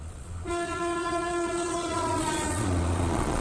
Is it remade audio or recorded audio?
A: remade